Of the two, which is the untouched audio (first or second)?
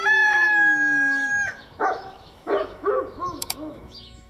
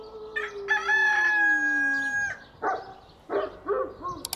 second